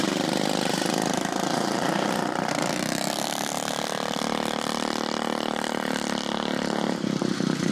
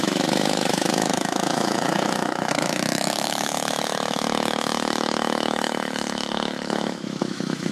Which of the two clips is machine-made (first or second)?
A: second